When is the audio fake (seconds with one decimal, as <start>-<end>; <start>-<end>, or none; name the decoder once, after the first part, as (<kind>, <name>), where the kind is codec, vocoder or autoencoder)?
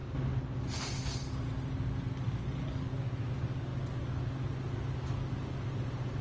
none